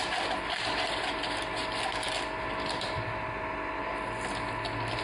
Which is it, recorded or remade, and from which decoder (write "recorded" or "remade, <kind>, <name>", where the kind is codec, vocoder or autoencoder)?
recorded